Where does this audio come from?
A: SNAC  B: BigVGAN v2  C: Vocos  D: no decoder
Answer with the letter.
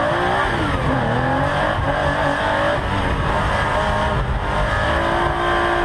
D